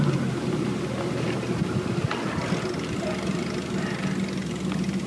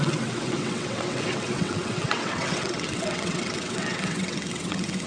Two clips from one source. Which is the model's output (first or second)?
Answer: second